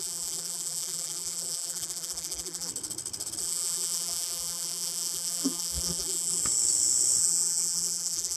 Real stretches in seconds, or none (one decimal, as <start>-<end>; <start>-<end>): 2.7-3.4; 6.4-7.2